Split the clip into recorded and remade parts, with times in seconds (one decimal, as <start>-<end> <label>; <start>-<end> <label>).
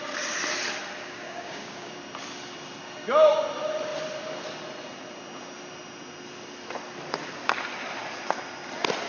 0.0-1.0 recorded; 1.0-2.0 remade; 2.0-9.1 recorded